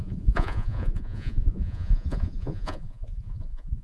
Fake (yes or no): yes